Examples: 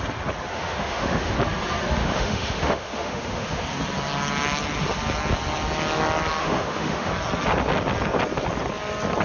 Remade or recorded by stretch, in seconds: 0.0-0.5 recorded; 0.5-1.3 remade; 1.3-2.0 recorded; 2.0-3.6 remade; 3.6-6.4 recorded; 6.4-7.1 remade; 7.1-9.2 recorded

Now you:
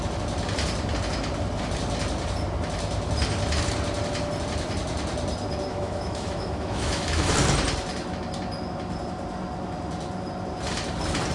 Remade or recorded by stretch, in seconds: 0.0-5.7 recorded; 5.7-7.3 remade; 7.3-11.3 recorded

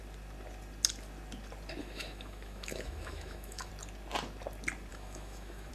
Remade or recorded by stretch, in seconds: 0.0-1.8 recorded; 1.8-3.7 remade; 3.7-4.9 recorded; 4.9-5.7 remade

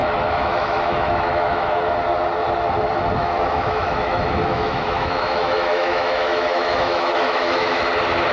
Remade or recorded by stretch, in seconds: 0.0-1.8 remade; 1.8-3.2 recorded; 3.2-7.8 remade; 7.8-8.3 recorded

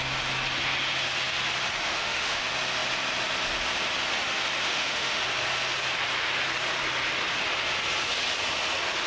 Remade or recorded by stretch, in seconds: 0.0-1.8 recorded; 1.8-2.4 remade; 2.4-4.6 recorded; 4.6-5.2 remade; 5.2-9.1 recorded

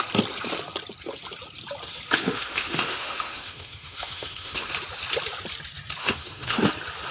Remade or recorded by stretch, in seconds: 0.0-2.2 recorded; 2.2-4.7 remade; 4.7-6.0 recorded; 6.0-6.6 remade; 6.6-7.1 recorded

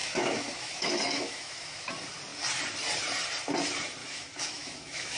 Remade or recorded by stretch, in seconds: 0.0-1.9 remade; 1.9-4.0 recorded; 4.0-5.2 remade